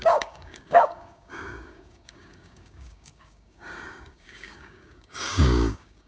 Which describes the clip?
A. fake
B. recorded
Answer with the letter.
A